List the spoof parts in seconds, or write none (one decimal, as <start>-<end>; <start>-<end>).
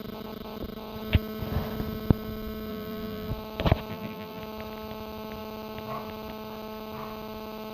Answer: 2.7-3.3; 3.9-4.4